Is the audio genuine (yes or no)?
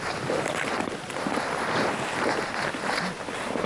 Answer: yes